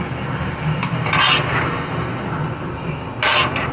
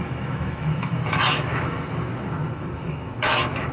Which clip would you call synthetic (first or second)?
second